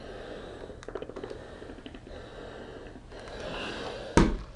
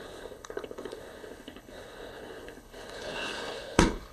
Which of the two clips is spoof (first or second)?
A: second